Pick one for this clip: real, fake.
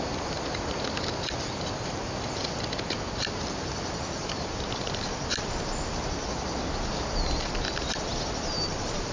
real